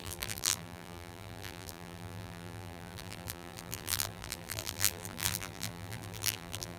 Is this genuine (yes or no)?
no